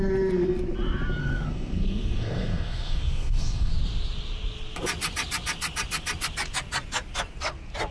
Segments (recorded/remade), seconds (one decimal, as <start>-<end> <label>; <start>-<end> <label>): 0.0-1.2 recorded; 1.2-3.7 remade; 3.7-7.9 recorded